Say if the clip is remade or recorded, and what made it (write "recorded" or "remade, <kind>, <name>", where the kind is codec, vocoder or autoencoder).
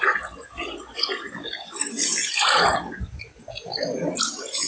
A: remade, vocoder, Vocos